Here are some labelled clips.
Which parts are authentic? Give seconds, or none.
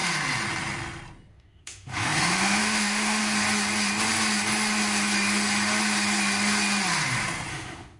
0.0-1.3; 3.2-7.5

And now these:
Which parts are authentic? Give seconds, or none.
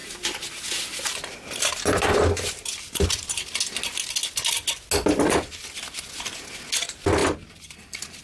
0.0-8.2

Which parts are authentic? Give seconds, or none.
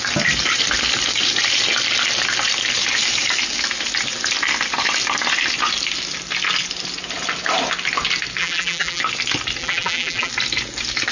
0.0-8.4; 9.0-9.6; 10.3-11.1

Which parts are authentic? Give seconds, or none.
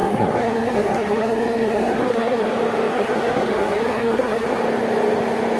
2.5-2.9; 4.6-5.6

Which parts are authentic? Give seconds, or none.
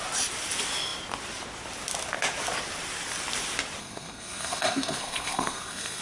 0.0-3.8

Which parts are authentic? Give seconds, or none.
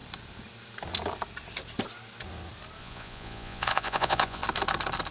0.0-2.8; 4.4-5.1